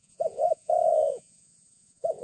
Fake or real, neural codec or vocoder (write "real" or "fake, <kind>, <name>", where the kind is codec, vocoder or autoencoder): fake, vocoder, Vocos